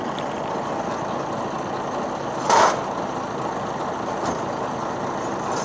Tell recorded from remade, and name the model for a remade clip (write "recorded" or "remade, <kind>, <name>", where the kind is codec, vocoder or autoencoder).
recorded